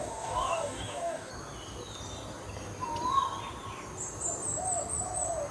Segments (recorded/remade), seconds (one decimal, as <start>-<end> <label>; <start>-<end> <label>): 0.0-1.3 remade; 1.3-5.5 recorded